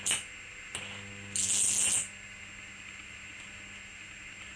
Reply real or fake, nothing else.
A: real